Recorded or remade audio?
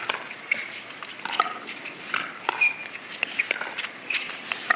recorded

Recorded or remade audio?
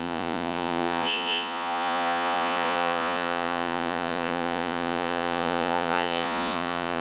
remade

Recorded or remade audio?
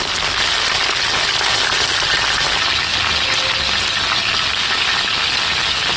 recorded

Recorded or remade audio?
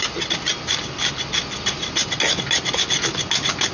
recorded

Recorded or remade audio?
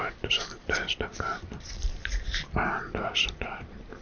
recorded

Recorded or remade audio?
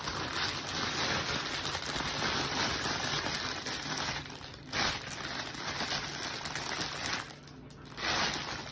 recorded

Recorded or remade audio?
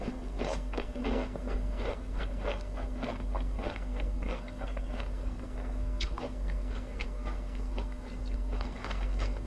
remade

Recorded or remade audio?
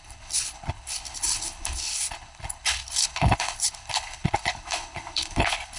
remade